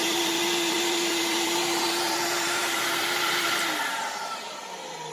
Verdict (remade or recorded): remade